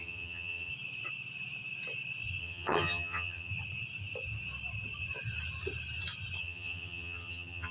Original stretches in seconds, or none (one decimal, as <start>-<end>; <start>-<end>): 0.7-2.4; 3.5-6.4

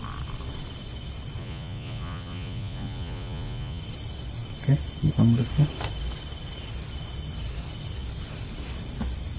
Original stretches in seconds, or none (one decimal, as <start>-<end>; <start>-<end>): 0.0-1.4; 3.8-9.4

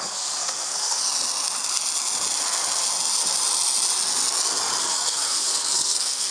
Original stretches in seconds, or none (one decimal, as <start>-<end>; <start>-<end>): 1.0-4.8

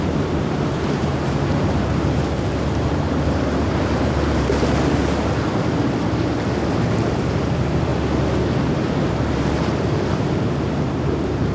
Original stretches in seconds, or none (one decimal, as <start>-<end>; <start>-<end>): 5.0-6.7; 7.9-9.0